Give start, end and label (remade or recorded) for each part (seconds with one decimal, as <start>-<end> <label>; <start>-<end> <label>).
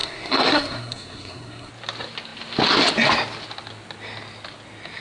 0.0-1.7 remade; 1.7-5.0 recorded